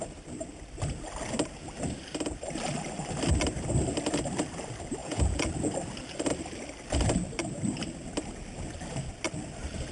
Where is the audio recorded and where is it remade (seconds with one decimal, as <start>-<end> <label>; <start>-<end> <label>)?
0.0-5.0 recorded; 5.0-5.5 remade; 5.5-9.9 recorded